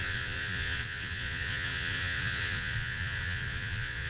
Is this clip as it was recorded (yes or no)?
no